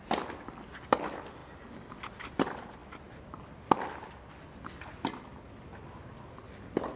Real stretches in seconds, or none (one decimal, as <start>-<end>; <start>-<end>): 0.0-7.0